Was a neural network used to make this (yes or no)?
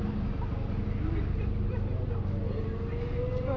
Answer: no